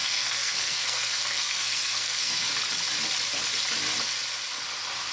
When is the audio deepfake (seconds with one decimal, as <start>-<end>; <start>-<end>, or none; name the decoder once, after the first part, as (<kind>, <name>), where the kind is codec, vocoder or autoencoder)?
0.0-2.5 (codec, SNAC)